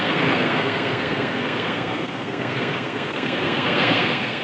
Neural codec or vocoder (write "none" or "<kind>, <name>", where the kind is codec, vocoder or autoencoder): codec, SNAC